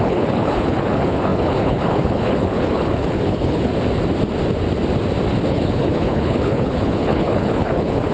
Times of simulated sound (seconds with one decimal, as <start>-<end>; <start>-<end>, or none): 0.0-3.7; 5.5-8.1